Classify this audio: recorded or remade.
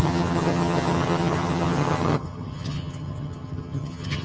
remade